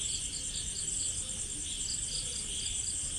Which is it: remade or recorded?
recorded